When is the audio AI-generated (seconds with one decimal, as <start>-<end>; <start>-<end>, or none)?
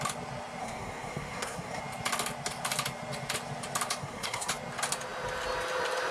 0.6-1.8; 4.0-4.5